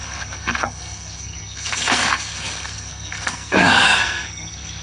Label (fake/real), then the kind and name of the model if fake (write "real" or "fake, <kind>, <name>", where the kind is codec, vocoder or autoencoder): fake, codec, SNAC